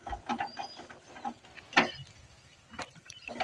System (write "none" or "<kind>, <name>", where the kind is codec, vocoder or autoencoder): none